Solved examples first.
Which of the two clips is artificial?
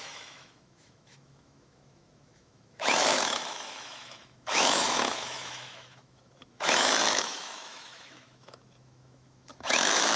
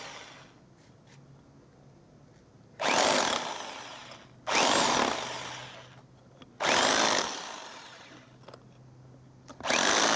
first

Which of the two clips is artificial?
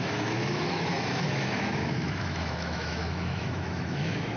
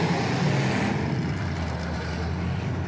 first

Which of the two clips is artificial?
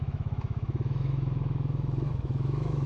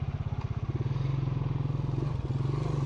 first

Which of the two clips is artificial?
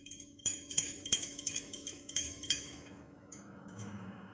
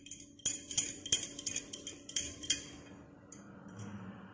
first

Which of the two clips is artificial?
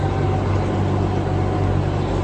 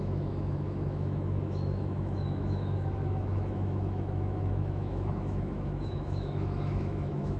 second